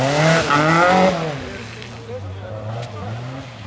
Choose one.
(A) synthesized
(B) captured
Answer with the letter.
B